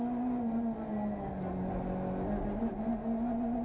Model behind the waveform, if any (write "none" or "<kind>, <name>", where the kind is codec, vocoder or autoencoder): none